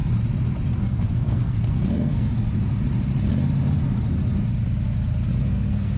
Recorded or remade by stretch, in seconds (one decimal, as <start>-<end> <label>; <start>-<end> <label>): 0.0-0.8 recorded; 0.8-2.3 remade; 2.3-5.4 recorded; 5.4-6.0 remade